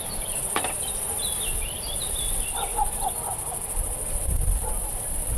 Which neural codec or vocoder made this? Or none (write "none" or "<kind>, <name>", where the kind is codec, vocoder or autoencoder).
vocoder, BigVGAN v2